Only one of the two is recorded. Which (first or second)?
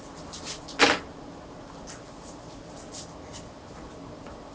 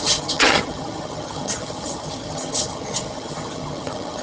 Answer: first